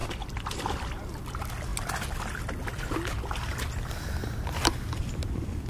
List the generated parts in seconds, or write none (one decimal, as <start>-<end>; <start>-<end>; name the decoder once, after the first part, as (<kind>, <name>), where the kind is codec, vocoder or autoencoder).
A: 0.0-0.9 (vocoder, BigVGAN v2)